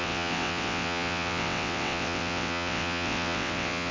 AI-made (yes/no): yes